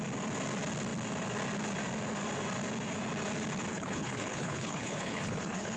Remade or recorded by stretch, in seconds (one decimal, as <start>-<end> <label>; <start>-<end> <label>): 0.0-3.7 recorded; 3.7-5.8 remade